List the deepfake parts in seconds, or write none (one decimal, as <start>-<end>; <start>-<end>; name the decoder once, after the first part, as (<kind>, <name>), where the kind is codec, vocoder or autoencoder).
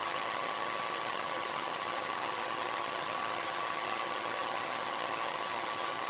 0.0-6.1 (vocoder, HiFi-GAN)